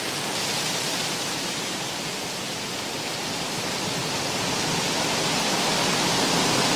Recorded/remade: recorded